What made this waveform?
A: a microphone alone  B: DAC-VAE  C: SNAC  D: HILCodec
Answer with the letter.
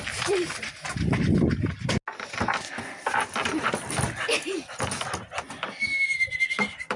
A